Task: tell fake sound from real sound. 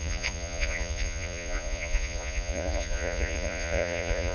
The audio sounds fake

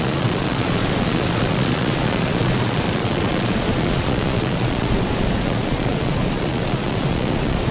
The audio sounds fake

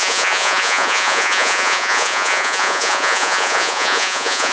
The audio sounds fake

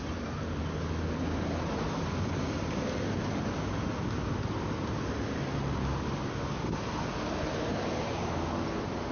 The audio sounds real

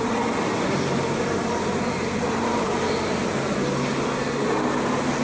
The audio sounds real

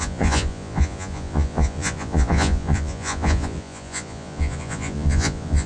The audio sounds fake